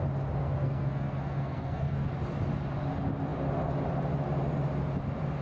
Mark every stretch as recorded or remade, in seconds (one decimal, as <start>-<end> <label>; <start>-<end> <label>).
0.0-0.4 recorded; 0.4-2.1 remade; 2.1-5.4 recorded